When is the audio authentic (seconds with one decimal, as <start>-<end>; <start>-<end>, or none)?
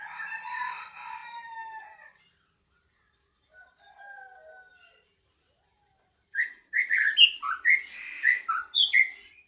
0.0-9.5